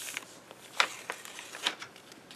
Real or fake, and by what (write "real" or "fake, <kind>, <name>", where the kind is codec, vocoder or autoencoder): real